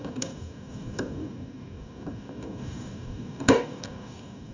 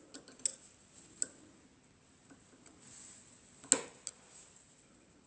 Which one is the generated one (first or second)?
first